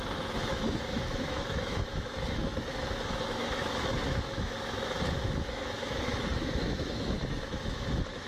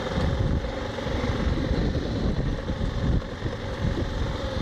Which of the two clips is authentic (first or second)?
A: second